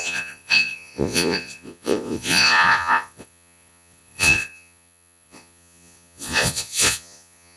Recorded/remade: remade